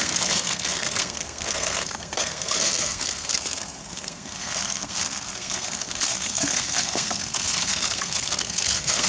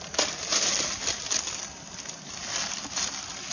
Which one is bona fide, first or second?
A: second